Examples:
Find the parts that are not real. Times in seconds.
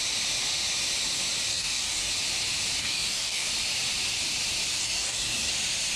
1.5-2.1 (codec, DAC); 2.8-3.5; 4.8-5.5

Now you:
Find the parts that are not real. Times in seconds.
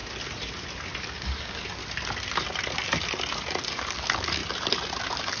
1.0-1.8 (codec, DAC); 3.7-4.4; 5.0-5.4